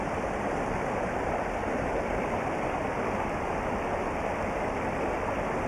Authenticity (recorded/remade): recorded